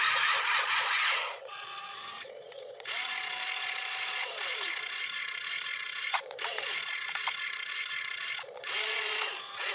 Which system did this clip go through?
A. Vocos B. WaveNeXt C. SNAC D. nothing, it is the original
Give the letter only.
A